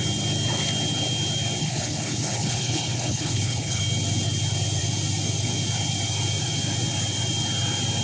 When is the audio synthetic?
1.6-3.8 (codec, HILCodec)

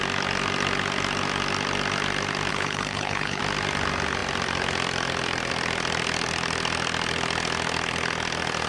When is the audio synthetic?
2.5-3.4 (codec, HILCodec)

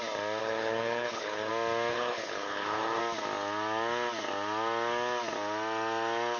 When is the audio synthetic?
0.4-1.5 (codec, HILCodec); 1.9-3.0

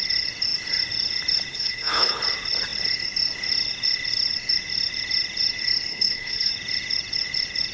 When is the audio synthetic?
1.5-2.2 (codec, HILCodec); 5.9-6.5

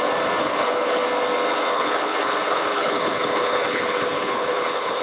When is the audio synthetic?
0.4-1.0 (codec, HILCodec); 1.7-5.0

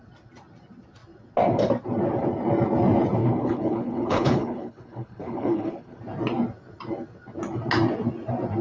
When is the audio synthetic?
3.2-6.0 (codec, HILCodec)

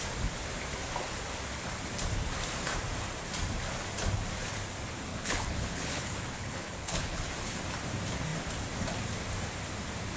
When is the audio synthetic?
5.1-7.3 (codec, HILCodec)

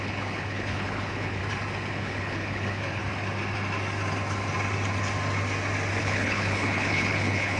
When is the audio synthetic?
0.0-1.4 (codec, HILCodec); 1.9-3.0; 6.0-7.6